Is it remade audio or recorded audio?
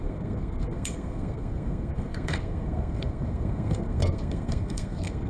remade